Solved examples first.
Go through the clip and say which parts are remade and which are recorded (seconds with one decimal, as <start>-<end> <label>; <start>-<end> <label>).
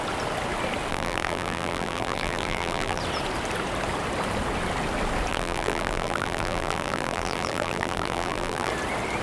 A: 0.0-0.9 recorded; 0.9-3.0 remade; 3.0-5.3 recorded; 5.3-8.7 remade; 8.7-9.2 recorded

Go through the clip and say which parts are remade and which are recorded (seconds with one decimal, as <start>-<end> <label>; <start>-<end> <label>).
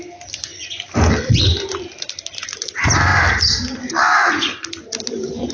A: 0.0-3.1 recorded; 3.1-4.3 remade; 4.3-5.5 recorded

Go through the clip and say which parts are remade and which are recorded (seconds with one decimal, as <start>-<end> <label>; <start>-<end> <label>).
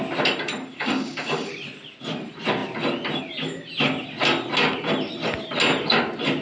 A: 0.0-0.7 recorded; 0.7-1.5 remade; 1.5-6.4 recorded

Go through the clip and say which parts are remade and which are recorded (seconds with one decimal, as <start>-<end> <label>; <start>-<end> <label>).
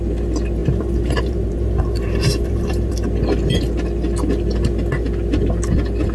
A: 0.0-0.6 recorded; 0.6-2.9 remade; 2.9-6.1 recorded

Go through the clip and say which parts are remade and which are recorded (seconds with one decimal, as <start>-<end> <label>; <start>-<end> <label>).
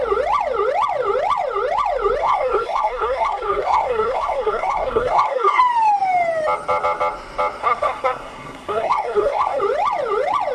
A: 0.0-2.2 recorded; 2.2-5.6 remade; 5.6-7.6 recorded; 7.6-9.6 remade; 9.6-10.5 recorded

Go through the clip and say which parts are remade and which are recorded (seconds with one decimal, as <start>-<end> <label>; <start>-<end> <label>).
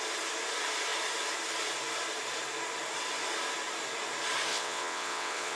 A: 0.0-4.5 recorded; 4.5-5.6 remade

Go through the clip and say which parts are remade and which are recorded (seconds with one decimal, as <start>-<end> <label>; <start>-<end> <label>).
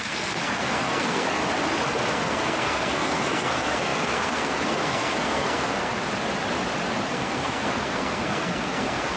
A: 0.0-1.4 remade; 1.4-2.1 recorded; 2.1-6.0 remade; 6.0-7.1 recorded; 7.1-9.2 remade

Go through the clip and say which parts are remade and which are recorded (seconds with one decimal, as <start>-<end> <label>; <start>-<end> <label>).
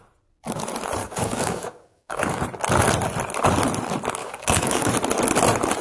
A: 0.0-1.0 recorded; 1.0-2.4 remade; 2.4-4.2 recorded; 4.2-4.9 remade; 4.9-5.8 recorded